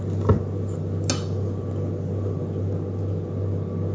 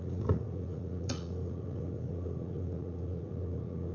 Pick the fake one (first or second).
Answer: second